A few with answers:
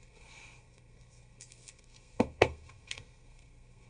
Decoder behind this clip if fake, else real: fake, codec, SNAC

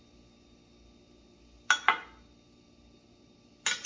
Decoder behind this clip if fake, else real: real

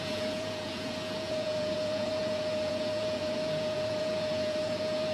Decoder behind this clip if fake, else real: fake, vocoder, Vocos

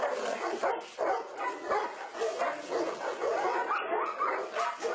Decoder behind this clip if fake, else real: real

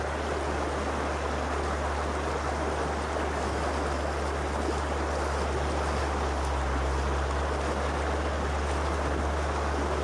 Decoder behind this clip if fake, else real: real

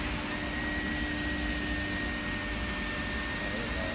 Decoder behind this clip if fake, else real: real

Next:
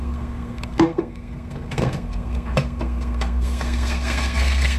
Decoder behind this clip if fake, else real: fake, codec, SNAC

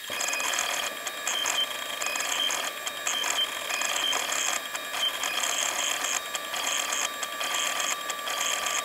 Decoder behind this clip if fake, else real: real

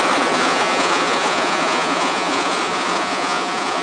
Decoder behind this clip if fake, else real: fake, vocoder, Vocos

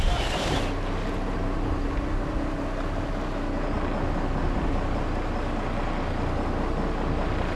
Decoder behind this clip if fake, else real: real